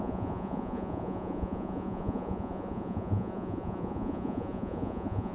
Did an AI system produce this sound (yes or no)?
yes